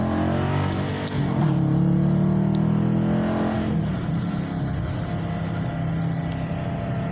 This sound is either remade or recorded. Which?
recorded